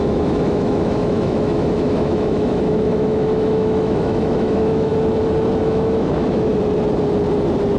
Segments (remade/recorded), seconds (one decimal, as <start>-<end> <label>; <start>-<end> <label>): 0.0-4.9 remade; 4.9-5.6 recorded; 5.6-6.5 remade; 6.5-7.8 recorded